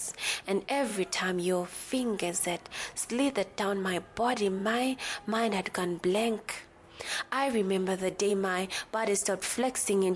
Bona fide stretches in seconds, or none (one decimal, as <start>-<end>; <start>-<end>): 0.0-10.2